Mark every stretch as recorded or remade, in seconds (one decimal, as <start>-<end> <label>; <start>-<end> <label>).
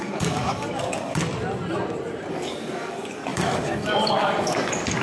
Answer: 0.0-1.2 remade; 1.2-2.3 recorded; 2.3-5.0 remade